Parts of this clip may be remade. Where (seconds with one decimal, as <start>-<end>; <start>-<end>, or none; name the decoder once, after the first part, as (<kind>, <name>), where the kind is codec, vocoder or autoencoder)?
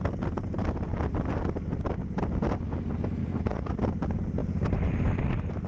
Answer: 3.2-3.8 (vocoder, Vocos)